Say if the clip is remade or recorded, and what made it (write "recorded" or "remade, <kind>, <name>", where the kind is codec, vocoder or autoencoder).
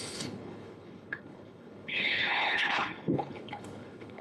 remade, codec, HILCodec